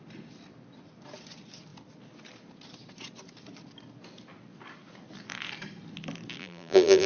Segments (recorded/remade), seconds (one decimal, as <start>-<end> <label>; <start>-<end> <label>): 0.0-6.4 recorded; 6.4-7.1 remade